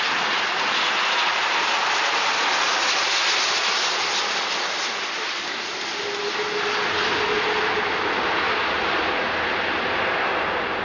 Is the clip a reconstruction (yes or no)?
no